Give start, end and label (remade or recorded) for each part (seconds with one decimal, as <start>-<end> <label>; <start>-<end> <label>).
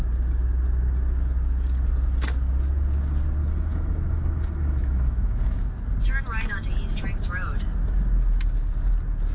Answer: 0.0-3.4 recorded; 3.4-5.6 remade; 5.6-9.3 recorded